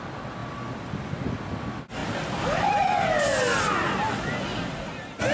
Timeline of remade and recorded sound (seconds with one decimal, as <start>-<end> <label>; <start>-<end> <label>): 0.0-5.3 recorded